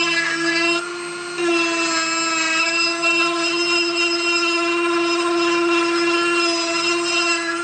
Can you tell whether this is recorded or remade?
recorded